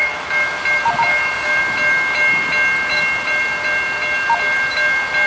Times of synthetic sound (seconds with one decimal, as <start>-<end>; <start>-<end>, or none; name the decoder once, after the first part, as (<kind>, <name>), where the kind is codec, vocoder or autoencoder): 0.0-0.5 (autoencoder, DAC-VAE); 1.1-1.6